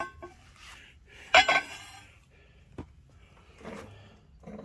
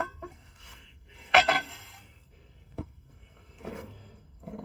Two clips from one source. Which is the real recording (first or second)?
first